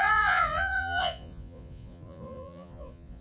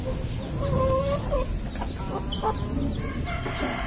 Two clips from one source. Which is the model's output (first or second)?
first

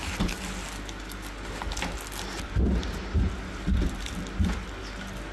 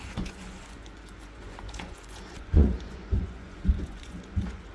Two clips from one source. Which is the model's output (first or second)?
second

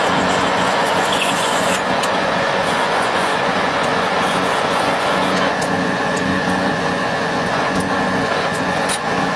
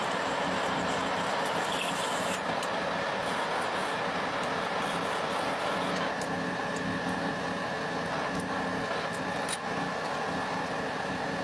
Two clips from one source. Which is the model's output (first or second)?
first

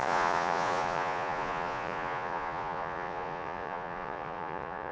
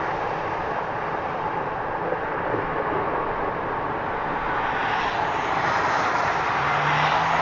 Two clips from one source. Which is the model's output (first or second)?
first